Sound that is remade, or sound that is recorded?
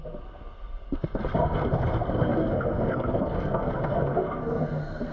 remade